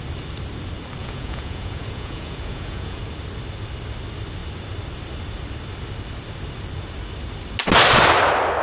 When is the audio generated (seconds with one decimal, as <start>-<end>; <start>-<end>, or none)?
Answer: 1.0-3.0